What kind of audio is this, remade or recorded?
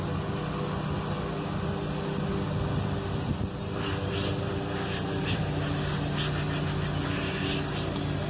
recorded